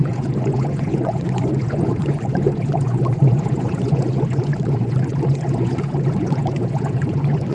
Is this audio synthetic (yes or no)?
yes